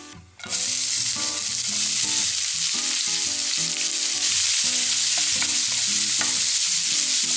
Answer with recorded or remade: recorded